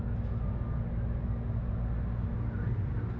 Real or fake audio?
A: real